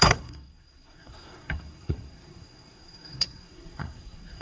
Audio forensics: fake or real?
fake